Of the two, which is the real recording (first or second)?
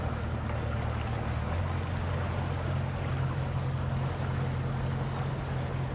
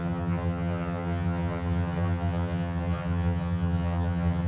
first